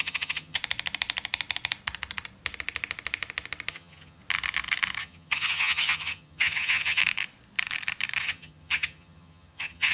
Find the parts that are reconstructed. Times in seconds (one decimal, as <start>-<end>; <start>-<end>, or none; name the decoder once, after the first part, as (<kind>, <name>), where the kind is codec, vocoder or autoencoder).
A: 0.0-0.6 (vocoder, HiFi-GAN); 3.7-4.2; 5.0-7.0; 8.2-9.9